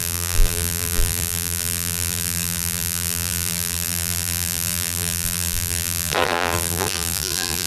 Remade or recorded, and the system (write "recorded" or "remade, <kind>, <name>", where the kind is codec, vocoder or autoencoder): remade, vocoder, BigVGAN v2